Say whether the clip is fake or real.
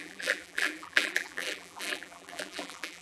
fake